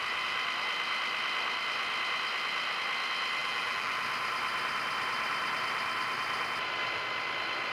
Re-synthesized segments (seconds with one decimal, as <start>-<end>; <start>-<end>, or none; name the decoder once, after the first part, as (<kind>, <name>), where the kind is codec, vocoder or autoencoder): 3.4-3.9 (vocoder, BigVGAN v2)